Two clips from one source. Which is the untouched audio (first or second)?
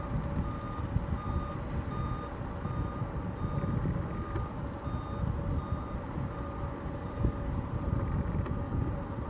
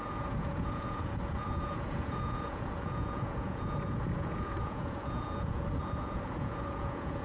first